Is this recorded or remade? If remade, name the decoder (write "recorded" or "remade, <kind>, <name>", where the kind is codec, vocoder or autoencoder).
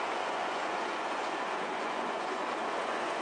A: remade, vocoder, Vocos